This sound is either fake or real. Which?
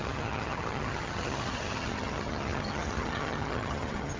fake